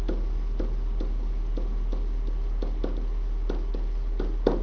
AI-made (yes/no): no